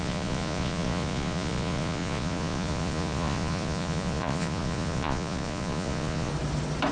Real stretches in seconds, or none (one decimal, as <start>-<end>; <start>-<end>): 6.3-6.9